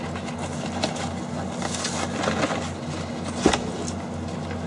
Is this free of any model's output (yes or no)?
yes